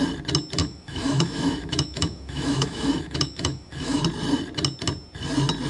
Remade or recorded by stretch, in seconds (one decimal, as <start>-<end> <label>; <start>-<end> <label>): 0.0-0.6 recorded; 0.6-4.0 remade; 4.0-5.7 recorded